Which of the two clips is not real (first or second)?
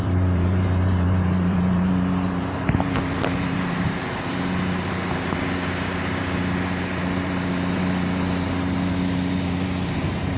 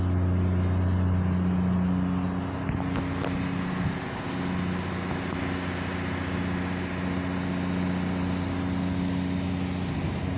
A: first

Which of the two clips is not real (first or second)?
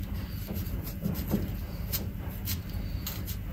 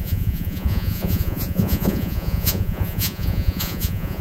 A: second